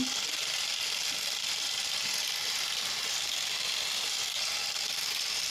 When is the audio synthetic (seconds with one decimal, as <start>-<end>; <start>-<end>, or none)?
none